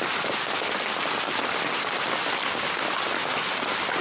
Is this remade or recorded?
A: recorded